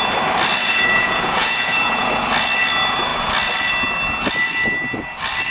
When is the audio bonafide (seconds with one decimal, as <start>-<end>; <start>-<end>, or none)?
0.0-0.6; 2.1-5.5